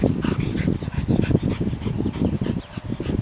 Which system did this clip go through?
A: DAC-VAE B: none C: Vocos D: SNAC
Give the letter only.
B